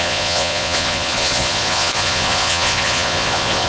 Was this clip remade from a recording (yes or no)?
yes